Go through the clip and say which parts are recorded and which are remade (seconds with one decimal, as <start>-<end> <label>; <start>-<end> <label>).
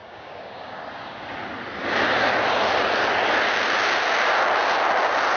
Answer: 0.0-0.8 remade; 0.8-5.4 recorded